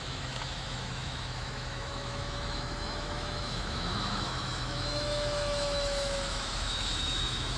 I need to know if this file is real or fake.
fake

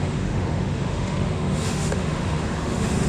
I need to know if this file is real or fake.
fake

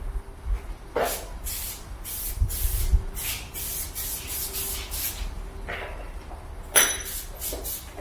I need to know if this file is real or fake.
real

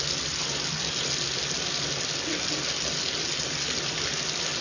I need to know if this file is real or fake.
real